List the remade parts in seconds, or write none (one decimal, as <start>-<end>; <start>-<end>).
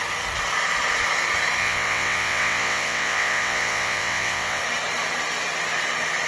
1.6-4.6